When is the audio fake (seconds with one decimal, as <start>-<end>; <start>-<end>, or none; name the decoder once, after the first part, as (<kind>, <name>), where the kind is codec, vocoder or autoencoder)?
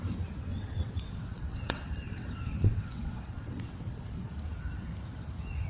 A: 0.5-3.9 (vocoder, WaveNeXt)